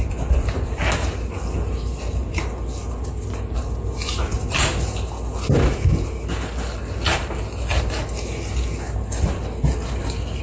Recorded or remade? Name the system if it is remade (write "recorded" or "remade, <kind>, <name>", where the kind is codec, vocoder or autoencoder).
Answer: recorded